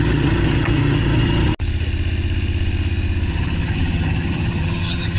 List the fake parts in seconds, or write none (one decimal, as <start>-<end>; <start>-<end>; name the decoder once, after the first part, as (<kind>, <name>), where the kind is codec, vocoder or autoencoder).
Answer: 0.0-1.5 (vocoder, HiFi-GAN); 3.3-5.2